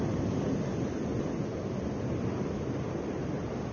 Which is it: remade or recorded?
recorded